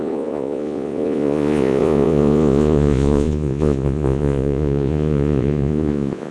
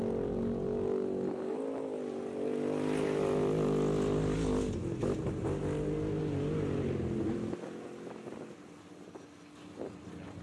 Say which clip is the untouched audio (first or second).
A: second